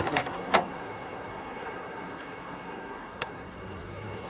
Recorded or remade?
remade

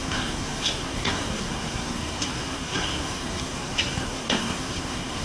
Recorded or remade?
remade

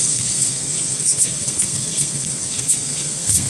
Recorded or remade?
remade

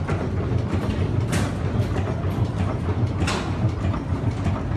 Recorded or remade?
recorded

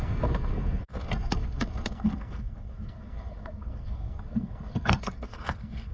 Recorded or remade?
remade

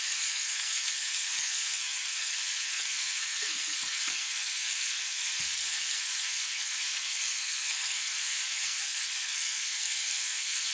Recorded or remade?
remade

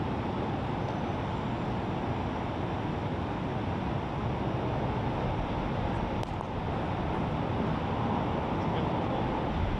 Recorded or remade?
recorded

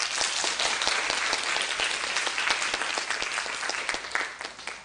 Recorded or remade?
recorded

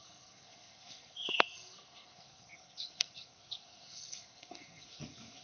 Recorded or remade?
remade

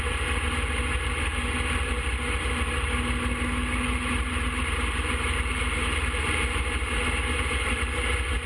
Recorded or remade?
recorded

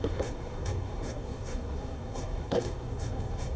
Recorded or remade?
remade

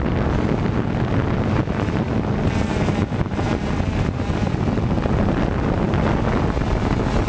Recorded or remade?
recorded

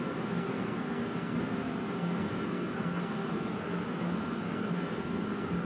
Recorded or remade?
remade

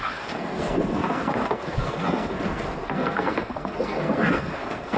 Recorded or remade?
remade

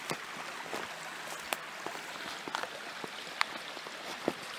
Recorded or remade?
recorded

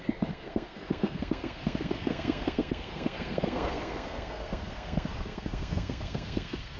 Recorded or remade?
remade